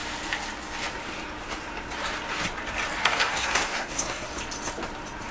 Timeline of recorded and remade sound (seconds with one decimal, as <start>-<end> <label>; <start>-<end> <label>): 0.0-3.0 recorded; 3.0-4.3 remade; 4.3-5.3 recorded